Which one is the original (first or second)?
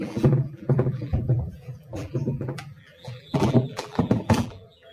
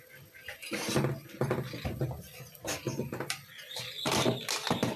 second